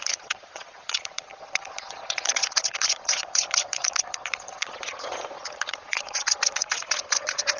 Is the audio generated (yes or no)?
yes